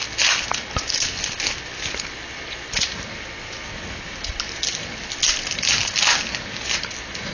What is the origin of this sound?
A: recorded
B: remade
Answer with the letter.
A